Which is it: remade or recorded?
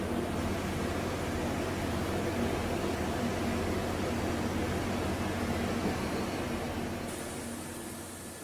recorded